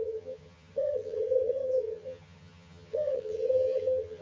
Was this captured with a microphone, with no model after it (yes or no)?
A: no